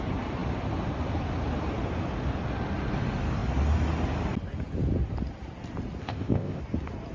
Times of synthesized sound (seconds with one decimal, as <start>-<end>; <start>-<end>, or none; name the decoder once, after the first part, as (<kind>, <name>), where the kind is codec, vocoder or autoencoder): 6.0-6.6 (codec, ZipCodec)